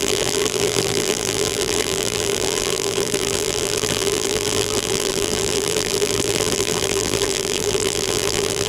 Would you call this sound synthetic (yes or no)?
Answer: yes